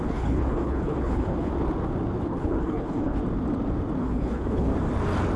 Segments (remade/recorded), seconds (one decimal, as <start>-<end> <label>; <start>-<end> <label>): 0.0-1.5 remade; 1.5-2.2 recorded; 2.2-3.2 remade; 3.2-4.0 recorded; 4.0-4.7 remade; 4.7-5.4 recorded